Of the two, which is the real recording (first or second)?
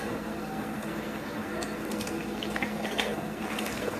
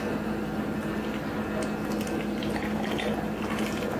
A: second